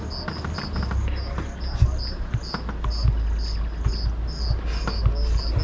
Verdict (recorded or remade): recorded